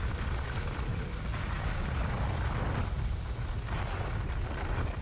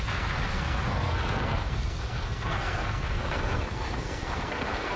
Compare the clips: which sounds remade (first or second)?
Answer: second